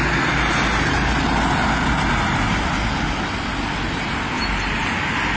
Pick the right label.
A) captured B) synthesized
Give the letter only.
A